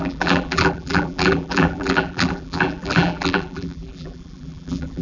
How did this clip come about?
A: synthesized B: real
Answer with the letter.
A